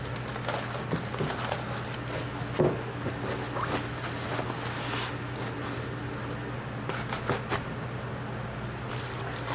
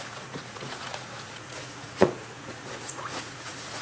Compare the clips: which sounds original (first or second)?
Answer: first